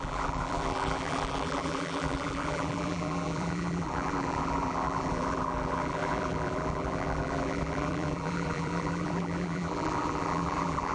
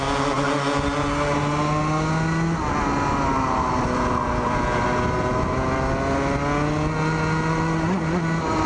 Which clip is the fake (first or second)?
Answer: first